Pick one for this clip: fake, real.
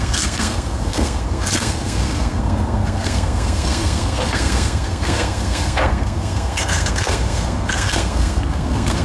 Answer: fake